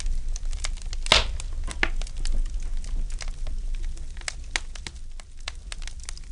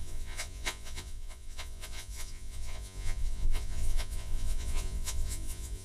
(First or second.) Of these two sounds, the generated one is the second